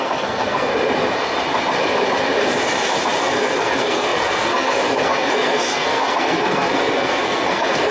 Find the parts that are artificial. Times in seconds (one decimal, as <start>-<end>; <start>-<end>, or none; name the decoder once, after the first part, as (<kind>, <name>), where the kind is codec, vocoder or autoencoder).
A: 0.0-0.7 (codec, SNAC); 3.2-7.9